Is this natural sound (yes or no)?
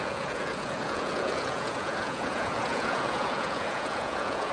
no